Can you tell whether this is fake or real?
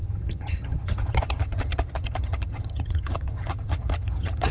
fake